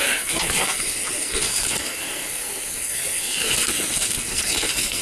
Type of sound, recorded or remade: remade